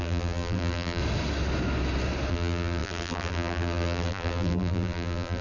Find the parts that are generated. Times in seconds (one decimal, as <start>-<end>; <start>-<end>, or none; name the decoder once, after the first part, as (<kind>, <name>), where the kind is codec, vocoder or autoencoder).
0.0-1.0 (vocoder, BigVGAN v2); 2.3-5.4